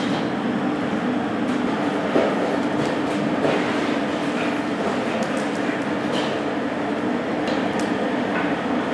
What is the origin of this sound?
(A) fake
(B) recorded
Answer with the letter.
B